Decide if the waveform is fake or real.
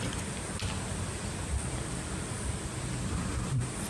real